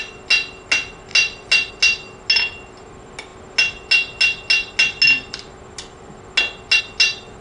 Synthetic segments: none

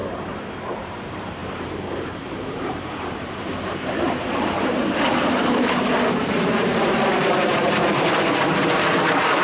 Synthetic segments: 0.7-9.4 (vocoder, BigVGAN v2)

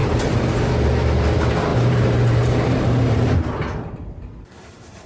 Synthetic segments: 0.0-0.7 (vocoder, BigVGAN v2); 1.7-3.3

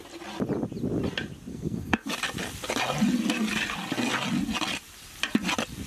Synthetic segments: 1.5-2.1 (codec, SNAC)

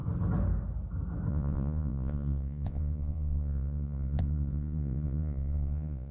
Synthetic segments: 1.3-6.1 (vocoder, Vocos)